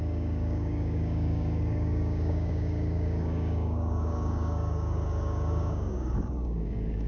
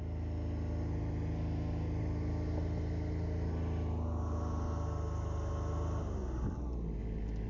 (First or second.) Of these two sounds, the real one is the second